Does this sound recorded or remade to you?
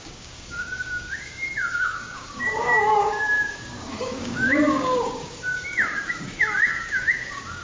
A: remade